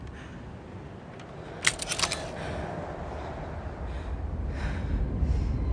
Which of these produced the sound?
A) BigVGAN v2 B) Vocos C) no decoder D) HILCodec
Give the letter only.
C